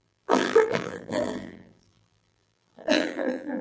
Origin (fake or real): fake